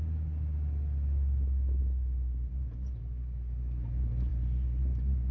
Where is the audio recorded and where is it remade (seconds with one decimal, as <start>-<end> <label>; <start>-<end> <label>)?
0.0-5.3 recorded